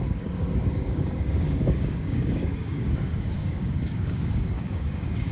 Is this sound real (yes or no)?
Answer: no